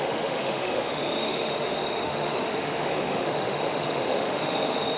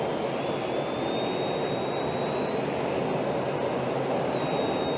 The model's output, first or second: first